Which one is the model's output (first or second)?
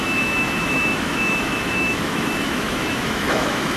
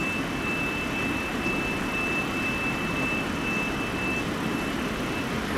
first